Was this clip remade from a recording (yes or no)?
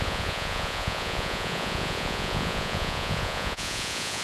yes